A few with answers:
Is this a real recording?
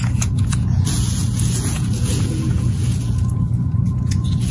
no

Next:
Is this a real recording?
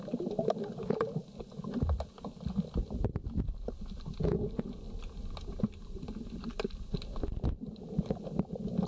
yes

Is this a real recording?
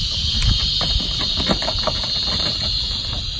yes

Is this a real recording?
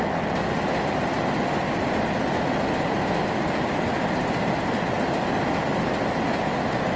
yes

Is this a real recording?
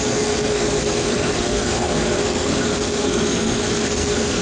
no